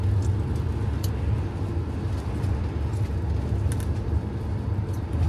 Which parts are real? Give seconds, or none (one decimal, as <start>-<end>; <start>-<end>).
0.0-5.3